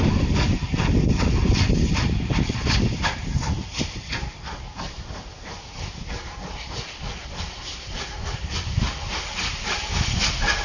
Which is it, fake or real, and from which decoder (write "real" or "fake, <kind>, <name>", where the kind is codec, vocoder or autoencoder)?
real